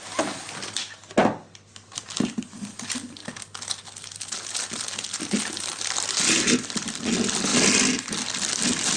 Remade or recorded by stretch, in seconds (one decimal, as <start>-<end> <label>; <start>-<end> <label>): 0.0-9.0 recorded